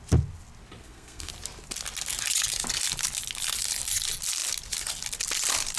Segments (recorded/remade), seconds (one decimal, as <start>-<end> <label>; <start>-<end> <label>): 0.0-0.8 recorded; 0.8-1.3 remade; 1.3-5.8 recorded